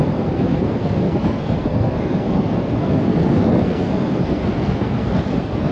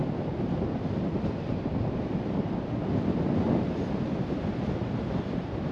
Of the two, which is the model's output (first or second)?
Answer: first